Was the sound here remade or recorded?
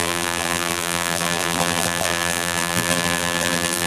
remade